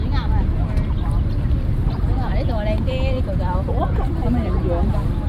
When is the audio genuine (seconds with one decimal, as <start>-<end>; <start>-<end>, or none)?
0.0-5.3

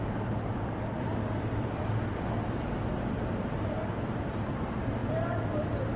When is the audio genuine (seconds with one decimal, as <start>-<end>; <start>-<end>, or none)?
0.5-2.9

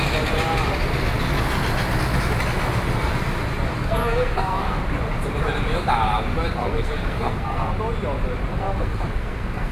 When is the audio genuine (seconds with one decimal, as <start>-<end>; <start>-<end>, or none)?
0.0-3.7; 4.8-6.6; 7.7-8.5

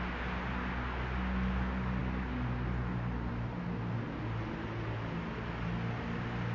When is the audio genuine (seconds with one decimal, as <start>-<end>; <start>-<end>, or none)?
0.0-6.5